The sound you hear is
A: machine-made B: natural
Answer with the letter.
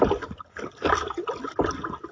B